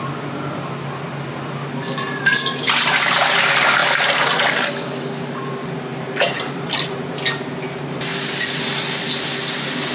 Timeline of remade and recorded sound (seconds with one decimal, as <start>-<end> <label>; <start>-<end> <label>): 0.0-5.9 recorded; 5.9-6.6 remade; 6.6-9.9 recorded